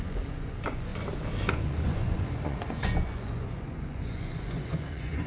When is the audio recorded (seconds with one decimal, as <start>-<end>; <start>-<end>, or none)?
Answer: 0.9-1.5